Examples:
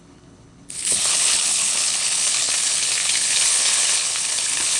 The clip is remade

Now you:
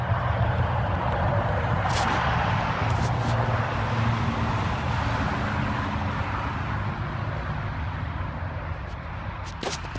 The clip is recorded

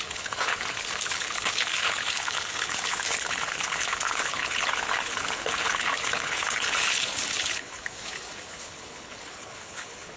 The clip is remade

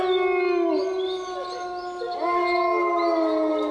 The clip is recorded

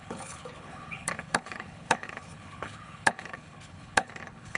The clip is remade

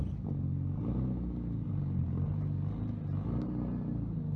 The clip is recorded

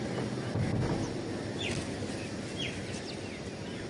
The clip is recorded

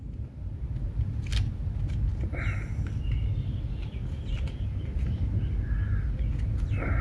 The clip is recorded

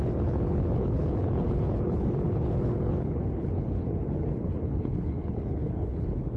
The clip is remade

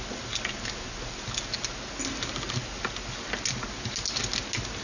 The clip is recorded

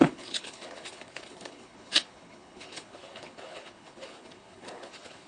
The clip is remade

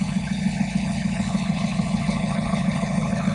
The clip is remade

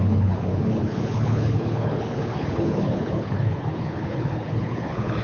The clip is remade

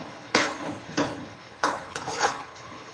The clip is remade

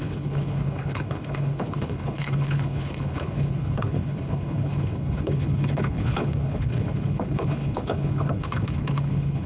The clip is remade